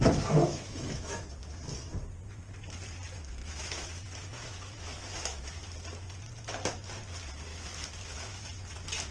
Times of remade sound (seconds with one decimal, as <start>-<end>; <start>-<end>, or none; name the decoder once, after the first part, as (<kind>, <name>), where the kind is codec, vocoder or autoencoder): 0.4-1.3 (autoencoder, DAC-VAE); 3.4-5.6; 7.5-8.5